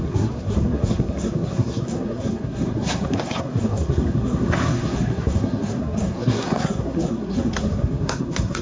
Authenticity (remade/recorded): remade